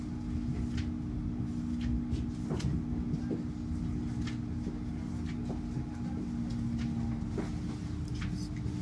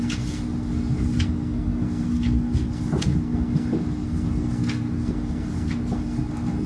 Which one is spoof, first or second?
second